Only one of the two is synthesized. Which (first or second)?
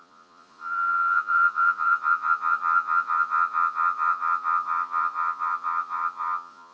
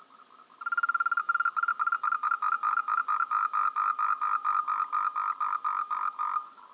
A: first